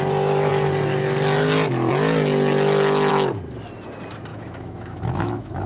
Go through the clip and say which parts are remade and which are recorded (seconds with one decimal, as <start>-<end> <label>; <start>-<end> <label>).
0.0-4.3 recorded; 4.3-5.7 remade